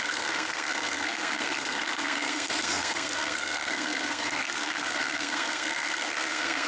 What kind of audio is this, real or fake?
fake